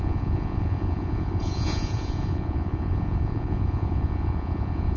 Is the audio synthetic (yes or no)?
yes